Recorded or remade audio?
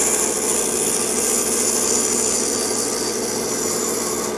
recorded